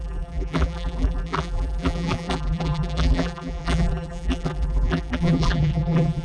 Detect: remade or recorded remade